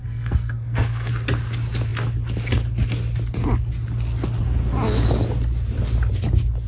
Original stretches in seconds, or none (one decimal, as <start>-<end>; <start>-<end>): 1.1-6.7